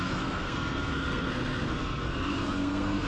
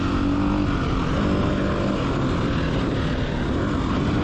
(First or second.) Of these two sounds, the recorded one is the second